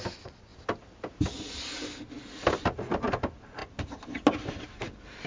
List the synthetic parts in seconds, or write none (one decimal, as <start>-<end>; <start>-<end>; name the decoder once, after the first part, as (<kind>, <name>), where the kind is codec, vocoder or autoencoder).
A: none